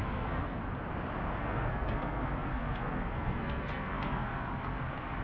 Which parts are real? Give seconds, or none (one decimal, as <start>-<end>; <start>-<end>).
0.6-1.4